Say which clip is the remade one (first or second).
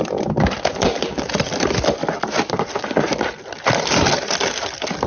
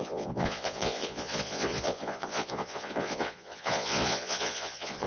second